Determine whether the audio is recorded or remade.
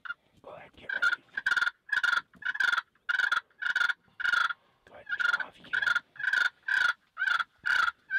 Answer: recorded